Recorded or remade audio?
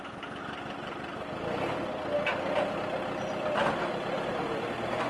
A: recorded